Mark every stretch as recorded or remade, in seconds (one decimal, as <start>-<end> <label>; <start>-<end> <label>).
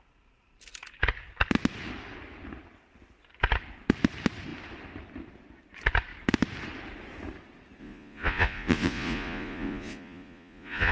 0.0-7.8 recorded; 7.8-10.9 remade